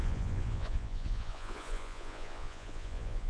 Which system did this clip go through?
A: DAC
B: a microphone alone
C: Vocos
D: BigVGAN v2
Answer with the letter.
C